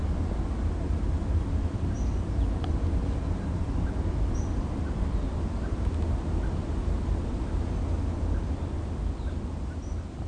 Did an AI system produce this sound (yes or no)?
no